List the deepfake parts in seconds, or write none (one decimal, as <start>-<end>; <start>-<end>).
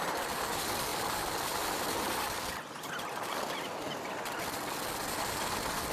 none